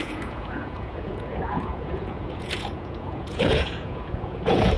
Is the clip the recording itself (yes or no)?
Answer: no